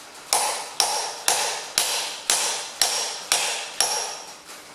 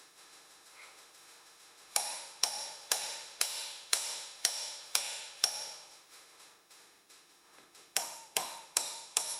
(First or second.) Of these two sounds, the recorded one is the first